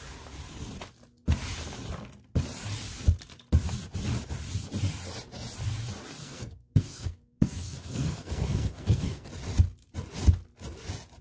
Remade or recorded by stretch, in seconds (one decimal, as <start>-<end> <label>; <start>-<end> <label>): 0.0-6.2 recorded; 6.2-9.3 remade; 9.3-11.2 recorded